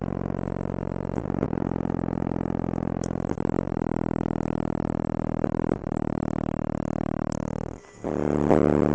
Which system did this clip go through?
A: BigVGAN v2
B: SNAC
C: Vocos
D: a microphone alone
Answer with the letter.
D